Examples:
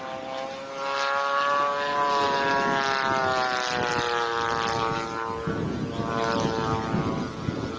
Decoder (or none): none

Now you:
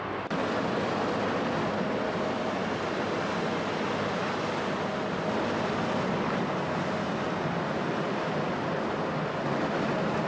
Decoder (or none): none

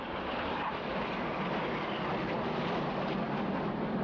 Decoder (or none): none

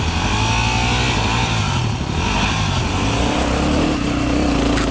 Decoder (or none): none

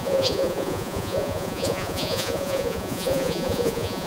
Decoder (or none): vocoder, Vocos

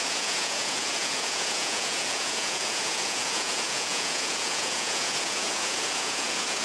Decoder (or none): vocoder, Vocos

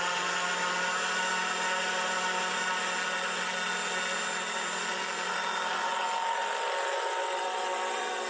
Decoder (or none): none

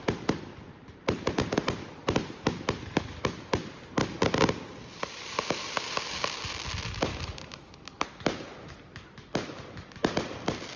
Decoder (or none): none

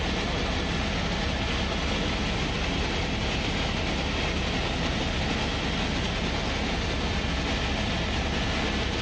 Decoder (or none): none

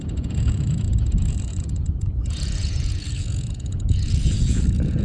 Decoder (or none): vocoder, Vocos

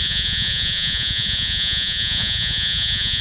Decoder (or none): vocoder, Vocos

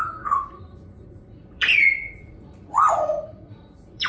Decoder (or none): vocoder, Vocos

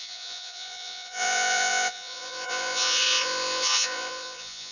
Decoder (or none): vocoder, Vocos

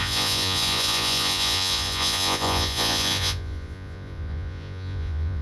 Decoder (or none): vocoder, Vocos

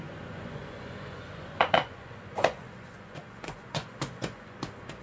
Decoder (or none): vocoder, Vocos